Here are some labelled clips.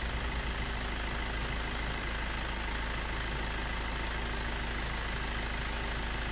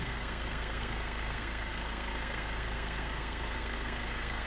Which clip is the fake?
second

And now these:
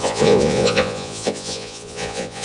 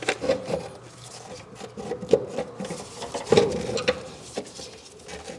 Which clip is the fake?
first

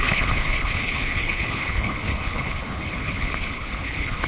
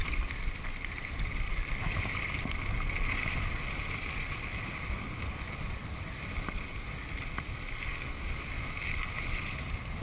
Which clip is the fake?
first